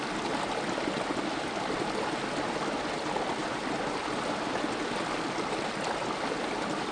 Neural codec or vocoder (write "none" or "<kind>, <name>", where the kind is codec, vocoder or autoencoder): none